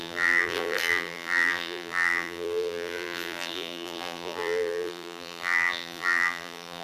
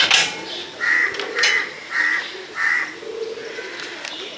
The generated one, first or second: first